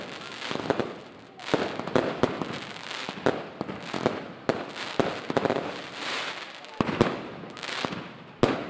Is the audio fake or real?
real